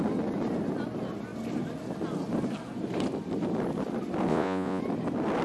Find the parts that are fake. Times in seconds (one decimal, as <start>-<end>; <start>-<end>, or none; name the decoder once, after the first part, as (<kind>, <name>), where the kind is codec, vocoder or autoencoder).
4.3-4.8 (vocoder, Vocos)

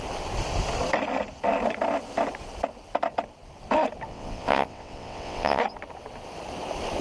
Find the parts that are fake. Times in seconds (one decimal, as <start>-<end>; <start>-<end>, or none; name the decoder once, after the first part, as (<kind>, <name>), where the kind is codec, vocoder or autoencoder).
4.1-5.6 (vocoder, WaveNeXt)